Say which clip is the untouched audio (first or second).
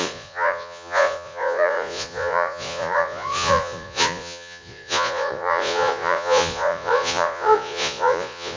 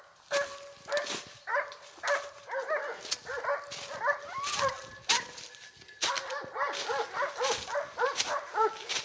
second